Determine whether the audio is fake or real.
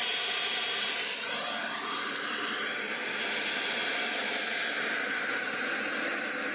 real